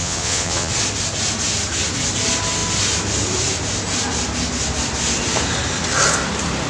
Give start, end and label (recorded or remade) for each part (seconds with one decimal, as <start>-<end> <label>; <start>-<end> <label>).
0.0-0.7 remade; 0.7-6.7 recorded